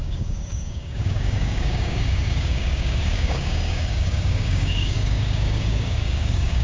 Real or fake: fake